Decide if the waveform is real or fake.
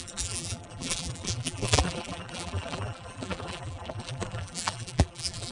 fake